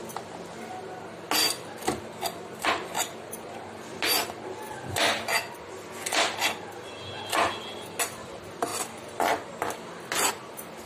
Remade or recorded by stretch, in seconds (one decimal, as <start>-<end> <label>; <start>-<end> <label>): 0.0-10.9 recorded